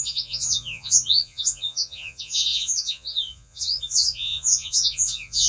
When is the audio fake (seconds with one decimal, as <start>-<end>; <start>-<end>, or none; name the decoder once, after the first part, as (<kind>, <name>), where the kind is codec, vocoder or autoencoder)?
0.0-5.5 (vocoder, Vocos)